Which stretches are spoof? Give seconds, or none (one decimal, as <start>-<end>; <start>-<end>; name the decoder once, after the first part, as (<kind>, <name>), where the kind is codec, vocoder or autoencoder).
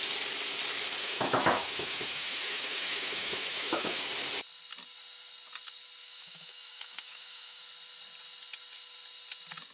1.0-4.0 (autoencoder, DAC-VAE); 6.0-7.6